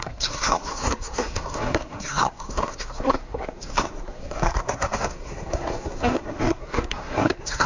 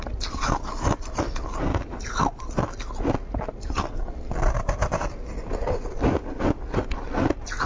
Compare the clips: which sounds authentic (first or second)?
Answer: second